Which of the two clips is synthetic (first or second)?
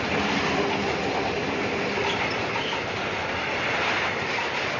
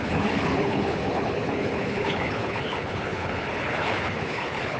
second